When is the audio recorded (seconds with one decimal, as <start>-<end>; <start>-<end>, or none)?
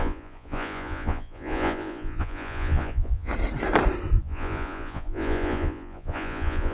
3.3-4.2